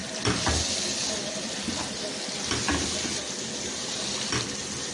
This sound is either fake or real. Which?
real